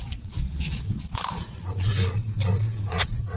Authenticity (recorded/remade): remade